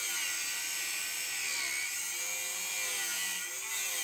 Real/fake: real